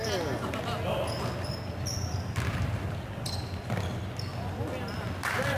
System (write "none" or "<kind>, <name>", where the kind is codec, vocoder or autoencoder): none